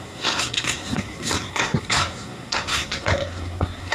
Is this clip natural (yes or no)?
no